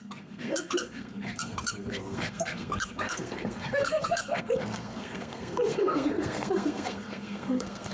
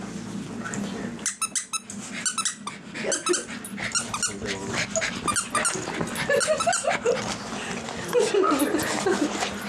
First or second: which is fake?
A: first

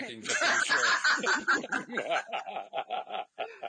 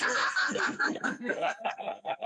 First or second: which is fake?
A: second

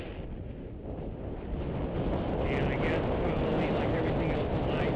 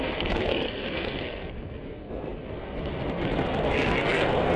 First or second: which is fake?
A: second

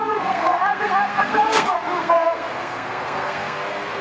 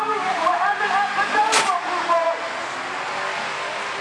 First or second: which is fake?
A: first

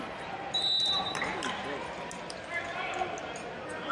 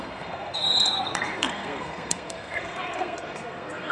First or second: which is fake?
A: second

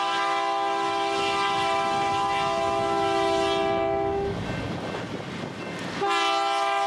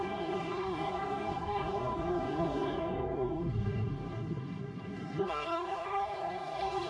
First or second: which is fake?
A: second